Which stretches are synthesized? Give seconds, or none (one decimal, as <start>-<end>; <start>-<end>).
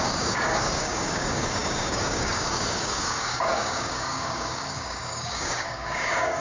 0.0-6.4